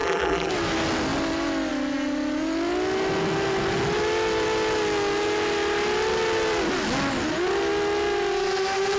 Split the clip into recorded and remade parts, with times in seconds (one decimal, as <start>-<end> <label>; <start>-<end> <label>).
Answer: 0.0-0.5 remade; 0.5-9.0 recorded